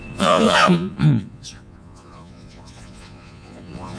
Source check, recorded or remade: remade